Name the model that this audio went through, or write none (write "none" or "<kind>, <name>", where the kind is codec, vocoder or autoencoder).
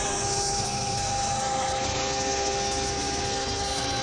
codec, SNAC